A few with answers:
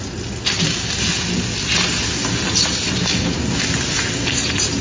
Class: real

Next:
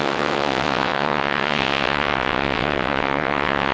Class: fake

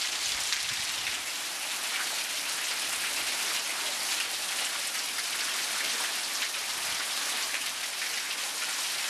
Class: real